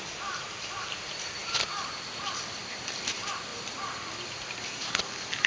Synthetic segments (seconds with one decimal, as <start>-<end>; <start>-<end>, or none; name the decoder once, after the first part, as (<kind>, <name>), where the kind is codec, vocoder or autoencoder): 0.0-3.5 (vocoder, BigVGAN v2); 4.2-5.5